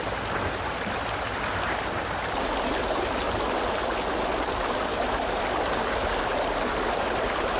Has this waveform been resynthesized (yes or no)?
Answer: no